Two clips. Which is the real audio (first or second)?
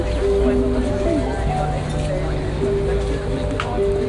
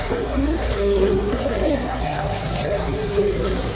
first